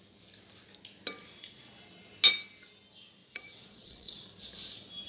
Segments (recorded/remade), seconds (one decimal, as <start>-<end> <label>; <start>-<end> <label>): 0.0-1.2 recorded; 1.2-1.9 remade; 1.9-3.2 recorded; 3.2-4.3 remade; 4.3-5.1 recorded